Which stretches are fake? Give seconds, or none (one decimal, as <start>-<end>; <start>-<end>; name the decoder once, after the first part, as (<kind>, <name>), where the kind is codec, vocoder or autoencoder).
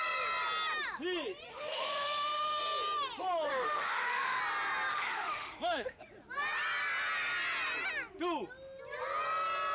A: 1.5-2.6 (autoencoder, DAC-VAE); 3.5-4.4; 4.9-6.0